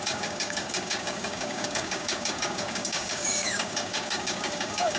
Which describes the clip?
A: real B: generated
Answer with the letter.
B